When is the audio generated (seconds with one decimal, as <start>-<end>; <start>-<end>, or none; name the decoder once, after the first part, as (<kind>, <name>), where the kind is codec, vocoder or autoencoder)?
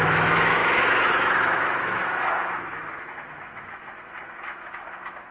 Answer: 0.0-5.3 (autoencoder, DAC-VAE)